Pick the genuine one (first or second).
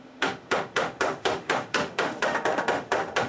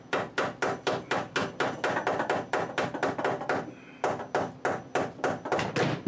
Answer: second